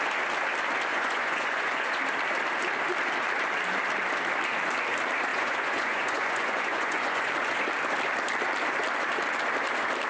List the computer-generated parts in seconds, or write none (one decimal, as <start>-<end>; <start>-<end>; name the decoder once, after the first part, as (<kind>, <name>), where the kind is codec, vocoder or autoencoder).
0.9-2.0 (vocoder, Vocos); 5.3-7.3